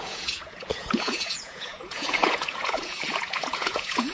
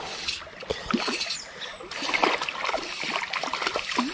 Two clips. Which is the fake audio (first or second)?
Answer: first